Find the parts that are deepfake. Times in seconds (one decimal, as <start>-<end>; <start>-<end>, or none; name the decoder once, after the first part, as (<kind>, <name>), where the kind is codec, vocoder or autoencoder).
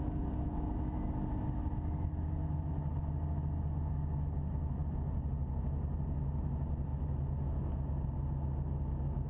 none